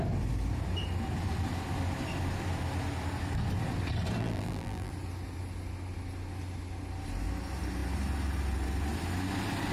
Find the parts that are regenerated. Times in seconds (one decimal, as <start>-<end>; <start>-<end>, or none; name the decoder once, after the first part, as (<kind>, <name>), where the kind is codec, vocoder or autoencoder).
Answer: 4.2-4.9 (vocoder, BigVGAN v2)